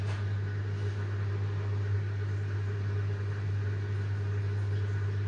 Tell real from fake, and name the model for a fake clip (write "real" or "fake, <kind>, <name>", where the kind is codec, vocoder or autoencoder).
real